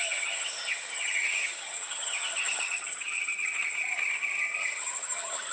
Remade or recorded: remade